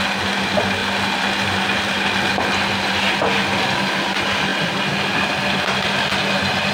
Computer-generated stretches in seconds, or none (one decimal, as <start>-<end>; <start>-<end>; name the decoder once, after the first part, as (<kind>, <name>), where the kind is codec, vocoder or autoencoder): none